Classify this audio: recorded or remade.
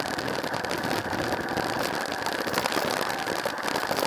remade